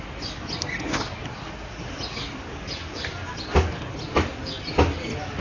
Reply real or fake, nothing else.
real